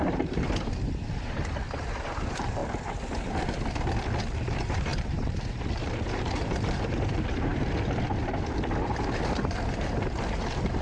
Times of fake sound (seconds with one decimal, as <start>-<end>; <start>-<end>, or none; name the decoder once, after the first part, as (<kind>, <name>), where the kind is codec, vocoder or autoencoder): 0.0-2.6 (vocoder, BigVGAN v2); 4.4-7.5; 8.9-10.8